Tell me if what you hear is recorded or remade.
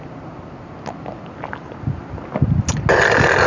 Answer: recorded